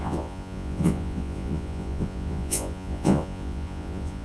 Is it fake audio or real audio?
fake